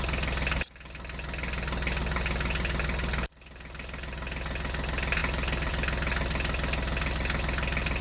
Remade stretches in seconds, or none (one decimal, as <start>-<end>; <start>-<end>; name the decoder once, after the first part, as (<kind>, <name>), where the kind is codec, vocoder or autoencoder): none